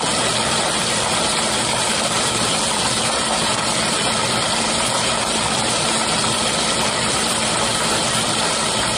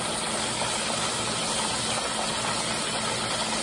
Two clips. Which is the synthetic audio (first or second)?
first